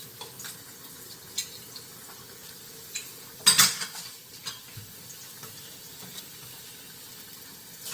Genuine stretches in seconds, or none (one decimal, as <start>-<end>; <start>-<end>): 0.0-2.4; 6.7-7.9